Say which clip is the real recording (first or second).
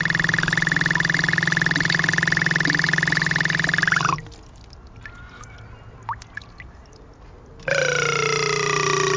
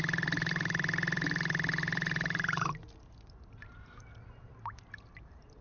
first